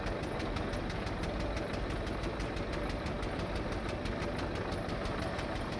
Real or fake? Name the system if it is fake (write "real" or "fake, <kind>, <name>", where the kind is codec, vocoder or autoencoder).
real